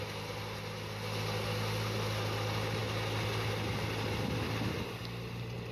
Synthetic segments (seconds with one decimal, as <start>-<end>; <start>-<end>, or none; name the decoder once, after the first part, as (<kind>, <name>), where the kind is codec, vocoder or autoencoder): none

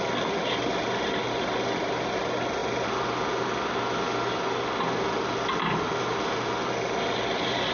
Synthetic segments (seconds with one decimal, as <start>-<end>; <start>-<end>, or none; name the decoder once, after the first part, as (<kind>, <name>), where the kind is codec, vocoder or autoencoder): none

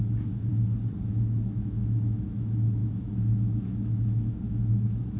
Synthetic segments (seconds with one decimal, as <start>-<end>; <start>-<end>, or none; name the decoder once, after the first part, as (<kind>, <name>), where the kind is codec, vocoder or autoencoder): 0.0-0.5 (autoencoder, DAC-VAE); 1.1-5.2

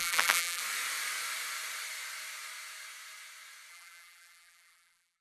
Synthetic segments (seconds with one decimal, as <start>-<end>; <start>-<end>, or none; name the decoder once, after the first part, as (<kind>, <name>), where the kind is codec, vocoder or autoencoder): 0.0-0.6 (vocoder, BigVGAN v2); 3.7-5.2

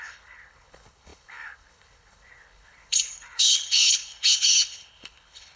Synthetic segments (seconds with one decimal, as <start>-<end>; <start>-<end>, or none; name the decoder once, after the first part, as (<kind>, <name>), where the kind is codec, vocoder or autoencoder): 0.0-5.6 (codec, HILCodec)

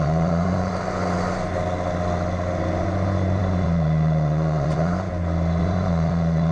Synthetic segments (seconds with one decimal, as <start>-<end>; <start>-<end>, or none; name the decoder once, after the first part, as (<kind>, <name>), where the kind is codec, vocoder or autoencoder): 0.0-0.7 (vocoder, Vocos); 2.8-5.1; 5.6-6.5